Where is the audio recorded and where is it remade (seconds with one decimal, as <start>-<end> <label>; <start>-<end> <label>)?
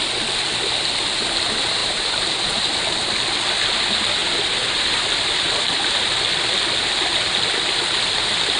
0.0-1.8 recorded; 1.8-3.4 remade; 3.4-8.6 recorded